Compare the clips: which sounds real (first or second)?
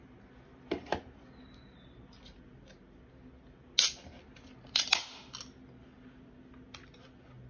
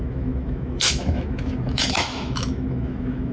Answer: first